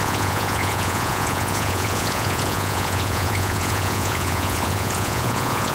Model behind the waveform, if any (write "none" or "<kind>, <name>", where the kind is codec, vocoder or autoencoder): vocoder, Vocos